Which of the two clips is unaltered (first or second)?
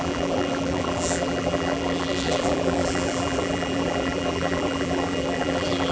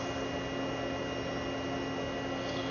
second